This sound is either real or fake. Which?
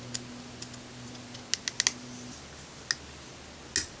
real